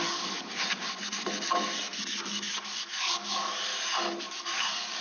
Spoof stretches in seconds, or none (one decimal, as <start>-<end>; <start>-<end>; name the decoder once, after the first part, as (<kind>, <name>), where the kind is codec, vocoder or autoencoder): 0.0-0.5 (codec, DAC); 2.0-3.7; 4.2-5.0